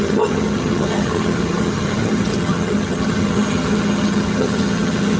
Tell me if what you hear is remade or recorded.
remade